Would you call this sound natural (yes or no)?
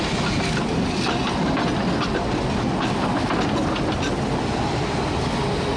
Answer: yes